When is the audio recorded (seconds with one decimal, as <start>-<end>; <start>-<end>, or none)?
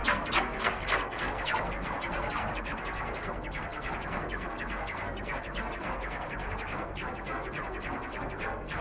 none